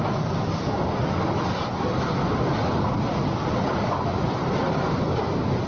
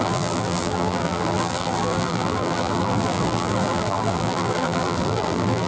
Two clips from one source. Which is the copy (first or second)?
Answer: second